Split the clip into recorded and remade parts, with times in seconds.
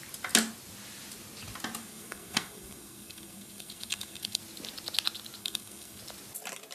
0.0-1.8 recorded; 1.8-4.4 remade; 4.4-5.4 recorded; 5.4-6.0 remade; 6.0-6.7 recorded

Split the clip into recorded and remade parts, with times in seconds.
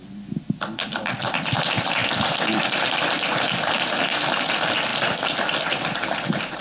0.0-6.6 recorded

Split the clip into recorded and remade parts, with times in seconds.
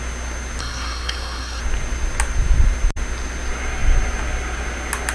0.0-0.6 recorded; 0.6-1.6 remade; 1.6-5.1 recorded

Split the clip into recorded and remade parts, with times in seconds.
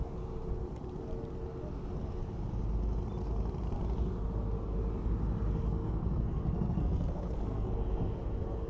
0.0-5.8 recorded; 5.8-7.8 remade; 7.8-8.7 recorded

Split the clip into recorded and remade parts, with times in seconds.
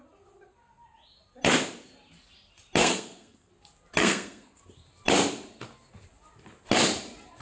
0.0-2.8 recorded; 2.8-3.5 remade; 3.5-4.0 recorded; 4.0-4.6 remade; 4.6-7.4 recorded